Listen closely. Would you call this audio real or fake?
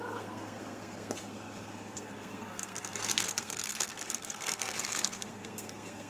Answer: fake